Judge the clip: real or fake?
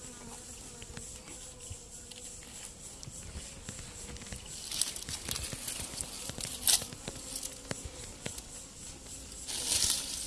real